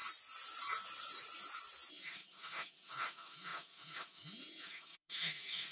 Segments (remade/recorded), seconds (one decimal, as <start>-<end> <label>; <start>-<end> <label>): 0.0-1.9 recorded; 1.9-5.7 remade